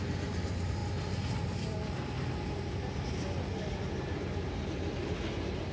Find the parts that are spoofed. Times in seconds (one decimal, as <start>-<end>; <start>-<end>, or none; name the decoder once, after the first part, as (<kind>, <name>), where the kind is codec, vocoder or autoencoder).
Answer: none